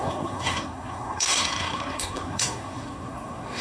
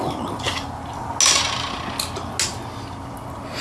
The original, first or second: second